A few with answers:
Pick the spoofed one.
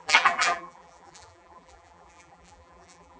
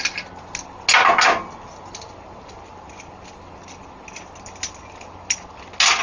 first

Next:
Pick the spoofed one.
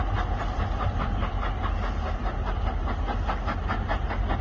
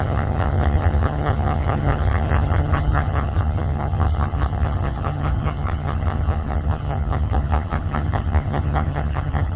second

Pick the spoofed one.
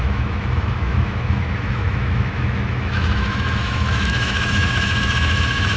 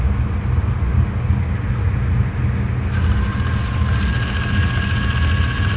first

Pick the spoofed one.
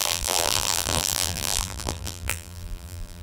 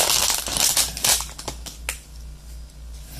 first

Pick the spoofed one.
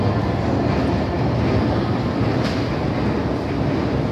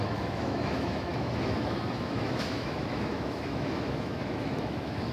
second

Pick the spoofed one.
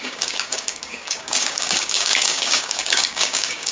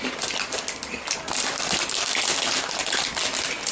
first